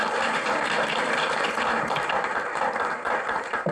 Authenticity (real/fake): fake